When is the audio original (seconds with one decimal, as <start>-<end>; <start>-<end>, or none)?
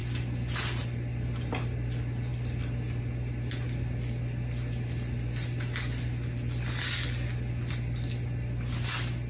0.0-9.3